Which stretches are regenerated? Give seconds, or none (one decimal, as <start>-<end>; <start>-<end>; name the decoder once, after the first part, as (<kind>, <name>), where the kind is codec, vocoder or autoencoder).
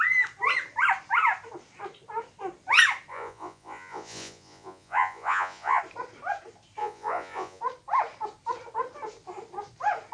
3.1-5.8 (vocoder, Vocos); 6.8-7.6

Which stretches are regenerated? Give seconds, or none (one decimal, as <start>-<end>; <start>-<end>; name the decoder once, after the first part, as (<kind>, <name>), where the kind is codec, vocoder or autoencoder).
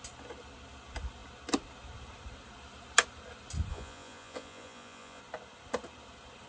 3.7-5.2 (vocoder, Vocos)